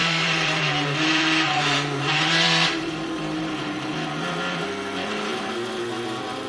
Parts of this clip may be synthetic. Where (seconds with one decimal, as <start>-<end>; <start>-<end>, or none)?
0.0-3.9